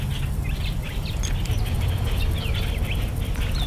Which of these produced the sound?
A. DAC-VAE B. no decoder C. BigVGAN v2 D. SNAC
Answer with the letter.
B